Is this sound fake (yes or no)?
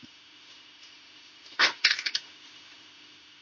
yes